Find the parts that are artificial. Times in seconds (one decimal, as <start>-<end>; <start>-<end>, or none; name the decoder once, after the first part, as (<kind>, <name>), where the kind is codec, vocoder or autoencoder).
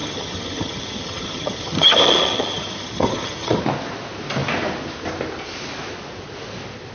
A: 0.0-3.6 (vocoder, HiFi-GAN)